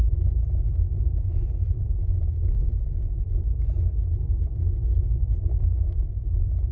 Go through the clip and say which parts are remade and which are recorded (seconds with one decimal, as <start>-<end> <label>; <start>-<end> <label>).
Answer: 0.0-5.5 recorded; 5.5-6.1 remade; 6.1-6.7 recorded